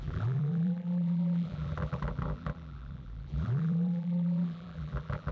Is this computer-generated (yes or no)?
yes